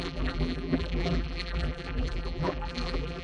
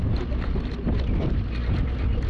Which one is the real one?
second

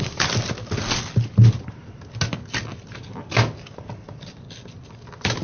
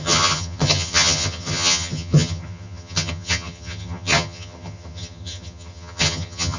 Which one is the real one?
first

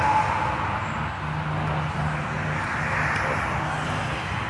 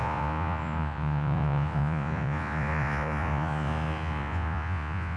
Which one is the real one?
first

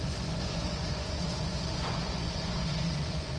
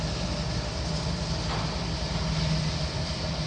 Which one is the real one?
second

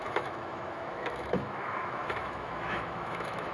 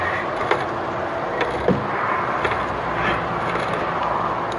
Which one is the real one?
second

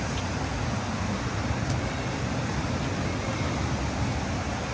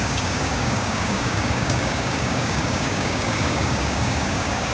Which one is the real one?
first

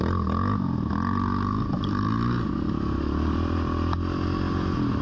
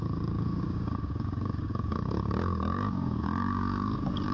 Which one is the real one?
first